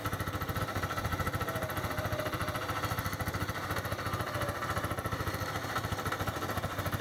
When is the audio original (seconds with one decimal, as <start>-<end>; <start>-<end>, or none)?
0.0-0.6